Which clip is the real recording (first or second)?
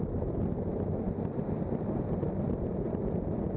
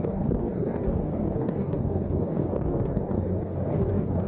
first